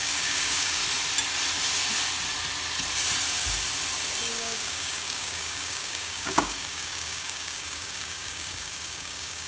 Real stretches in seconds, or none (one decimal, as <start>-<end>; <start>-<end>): 0.8-4.3